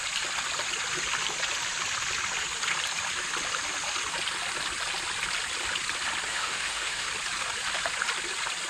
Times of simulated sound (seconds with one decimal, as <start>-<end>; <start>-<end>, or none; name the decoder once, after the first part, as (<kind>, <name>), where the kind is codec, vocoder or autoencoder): 6.3-7.1 (autoencoder, DAC-VAE)